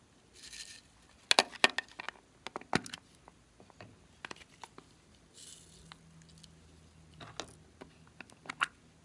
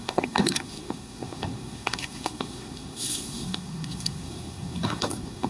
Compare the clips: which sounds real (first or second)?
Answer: first